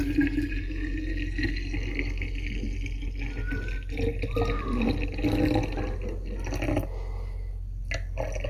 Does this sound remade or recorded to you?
recorded